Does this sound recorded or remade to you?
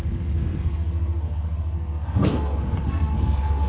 remade